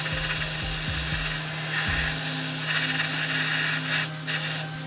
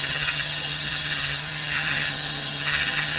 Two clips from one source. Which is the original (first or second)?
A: first